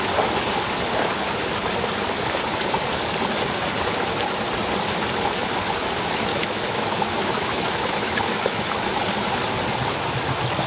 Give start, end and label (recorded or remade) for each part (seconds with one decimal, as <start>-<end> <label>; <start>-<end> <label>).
0.0-6.3 recorded; 6.3-8.9 remade; 8.9-10.7 recorded